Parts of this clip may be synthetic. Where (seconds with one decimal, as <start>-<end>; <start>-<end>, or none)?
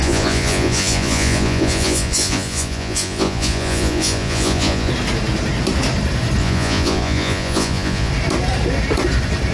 0.0-4.9; 6.4-8.1